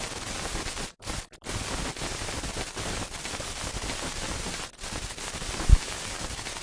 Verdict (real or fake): real